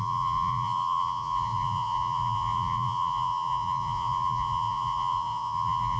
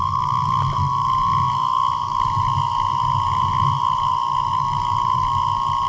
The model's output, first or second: first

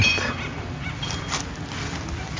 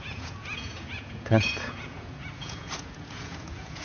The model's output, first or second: second